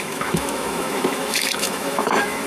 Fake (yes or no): yes